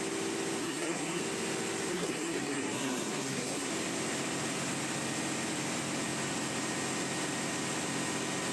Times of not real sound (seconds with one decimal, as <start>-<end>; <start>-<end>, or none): 0.6-1.2; 1.9-3.7

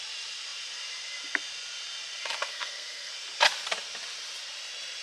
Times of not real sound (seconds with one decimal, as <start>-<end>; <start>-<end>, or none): 2.5-3.1

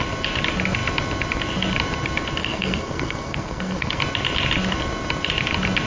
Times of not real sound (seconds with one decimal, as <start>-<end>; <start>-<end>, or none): 2.4-4.0

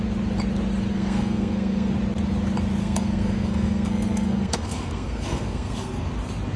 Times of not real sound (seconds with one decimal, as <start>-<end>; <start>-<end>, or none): 0.9-1.9; 2.8-6.1

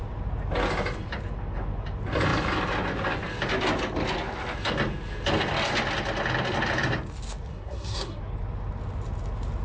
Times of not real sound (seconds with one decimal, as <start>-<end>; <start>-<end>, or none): 7.5-8.2

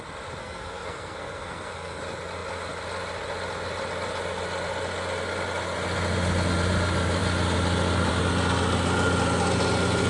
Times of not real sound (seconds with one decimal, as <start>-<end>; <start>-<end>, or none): 0.4-2.0